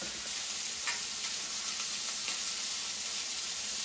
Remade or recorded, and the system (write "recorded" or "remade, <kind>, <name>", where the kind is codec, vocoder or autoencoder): recorded